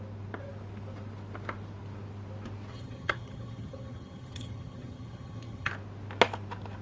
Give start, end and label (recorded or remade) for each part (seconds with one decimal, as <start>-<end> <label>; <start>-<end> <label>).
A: 0.0-2.7 recorded; 2.7-5.7 remade; 5.7-6.8 recorded